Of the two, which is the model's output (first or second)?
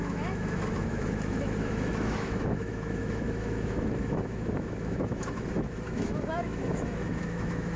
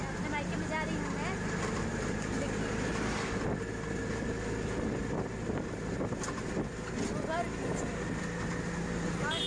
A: first